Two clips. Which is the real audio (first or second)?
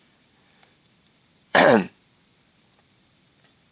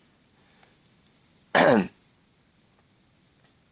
second